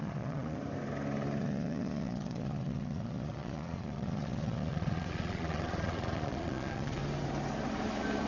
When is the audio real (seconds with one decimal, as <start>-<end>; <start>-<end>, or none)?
0.6-1.4; 7.0-8.3